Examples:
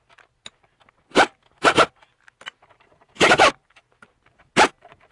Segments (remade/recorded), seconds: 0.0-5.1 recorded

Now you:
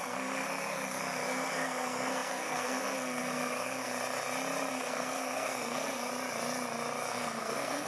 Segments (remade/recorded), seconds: 0.0-3.9 remade; 3.9-4.7 recorded; 4.7-6.1 remade; 6.1-7.1 recorded; 7.1-7.9 remade

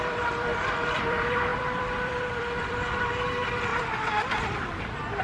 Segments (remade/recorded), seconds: 0.0-3.7 remade; 3.7-5.2 recorded

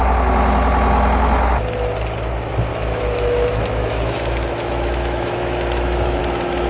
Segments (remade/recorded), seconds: 0.0-2.7 recorded; 2.7-6.2 remade; 6.2-6.7 recorded

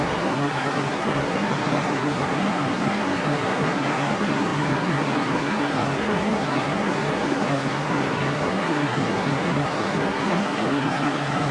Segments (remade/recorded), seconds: 0.0-11.5 remade

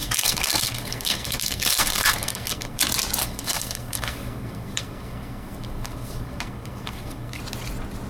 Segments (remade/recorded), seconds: 0.0-2.8 remade; 2.8-3.2 recorded; 3.2-7.4 remade; 7.4-8.1 recorded

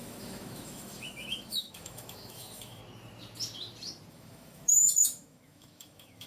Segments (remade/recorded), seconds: 0.0-2.8 remade; 2.8-4.1 recorded; 4.1-6.3 remade

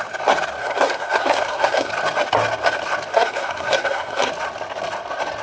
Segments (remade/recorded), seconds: 0.0-0.6 recorded; 0.6-1.9 remade; 1.9-3.1 recorded; 3.1-4.3 remade; 4.3-5.4 recorded